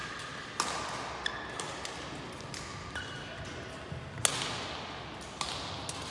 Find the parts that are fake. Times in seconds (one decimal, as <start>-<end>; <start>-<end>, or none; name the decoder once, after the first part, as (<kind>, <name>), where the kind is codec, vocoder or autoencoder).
none